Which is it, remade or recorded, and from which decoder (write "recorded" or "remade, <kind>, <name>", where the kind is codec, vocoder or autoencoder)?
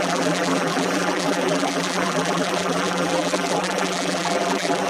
remade, vocoder, BigVGAN v2